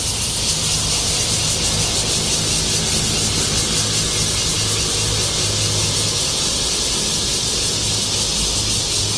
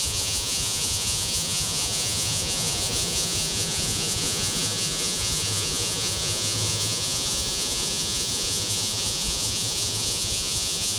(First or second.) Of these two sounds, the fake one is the second